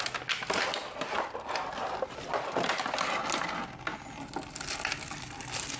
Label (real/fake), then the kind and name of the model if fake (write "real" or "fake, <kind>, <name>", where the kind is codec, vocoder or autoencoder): real